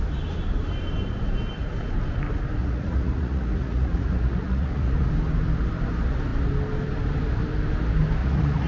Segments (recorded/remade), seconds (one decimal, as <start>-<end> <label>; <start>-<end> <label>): 0.0-2.6 recorded; 2.6-5.1 remade; 5.1-8.2 recorded; 8.2-8.7 remade